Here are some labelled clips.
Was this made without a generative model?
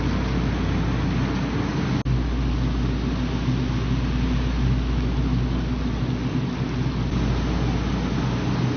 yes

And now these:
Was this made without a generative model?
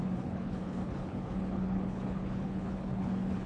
no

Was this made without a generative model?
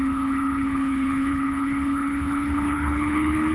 no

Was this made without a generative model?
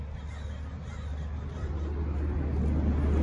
yes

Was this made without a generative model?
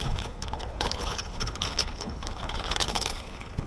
no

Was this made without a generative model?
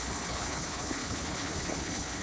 no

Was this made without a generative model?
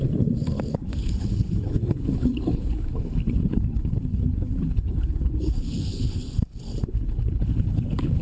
no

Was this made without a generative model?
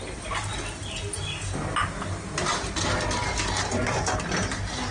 yes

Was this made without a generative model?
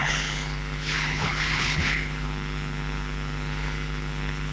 no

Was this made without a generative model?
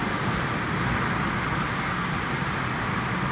yes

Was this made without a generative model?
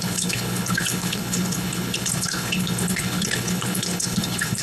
no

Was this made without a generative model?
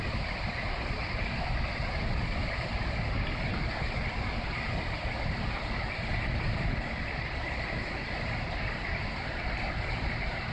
yes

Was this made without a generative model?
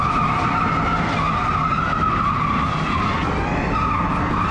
yes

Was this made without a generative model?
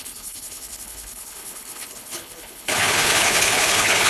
no